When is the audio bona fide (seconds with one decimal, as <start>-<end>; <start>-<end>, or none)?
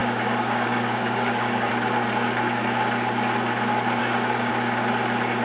1.7-4.0; 4.5-5.4